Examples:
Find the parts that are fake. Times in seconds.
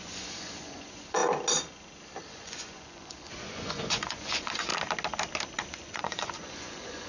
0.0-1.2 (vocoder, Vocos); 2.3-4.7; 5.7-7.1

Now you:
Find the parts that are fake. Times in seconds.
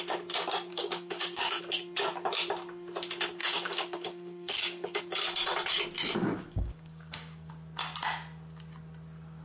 0.7-1.6 (codec, DAC); 3.4-5.0; 6.3-7.5